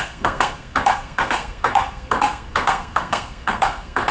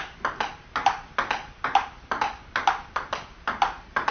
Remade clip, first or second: first